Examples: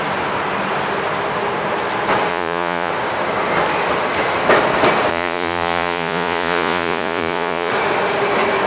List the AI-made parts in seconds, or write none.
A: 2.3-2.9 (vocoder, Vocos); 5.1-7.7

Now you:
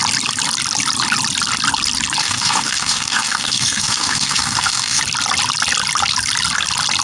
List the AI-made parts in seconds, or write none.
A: 2.2-5.0 (codec, DAC)